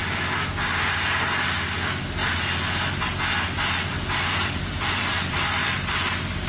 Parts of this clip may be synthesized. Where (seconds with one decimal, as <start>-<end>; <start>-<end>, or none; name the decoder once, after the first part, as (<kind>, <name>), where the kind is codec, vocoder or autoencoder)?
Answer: 3.9-6.5 (vocoder, BigVGAN v2)